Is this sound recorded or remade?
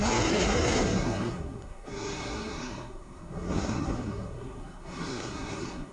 remade